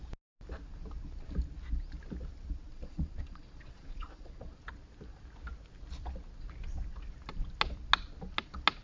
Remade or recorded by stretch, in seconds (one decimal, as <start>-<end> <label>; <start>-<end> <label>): 0.0-2.7 recorded; 2.7-4.6 remade; 4.6-8.8 recorded